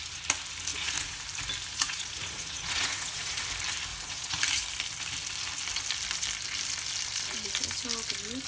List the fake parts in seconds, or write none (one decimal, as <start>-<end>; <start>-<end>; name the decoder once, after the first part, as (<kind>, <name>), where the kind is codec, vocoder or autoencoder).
0.7-1.2 (vocoder, Vocos); 1.7-3.4; 3.9-4.4